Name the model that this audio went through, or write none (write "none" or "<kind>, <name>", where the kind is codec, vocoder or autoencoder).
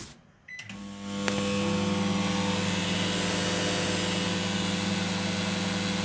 none